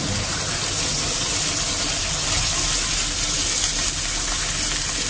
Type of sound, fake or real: real